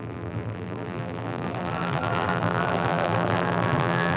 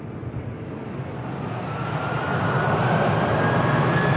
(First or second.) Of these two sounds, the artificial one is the first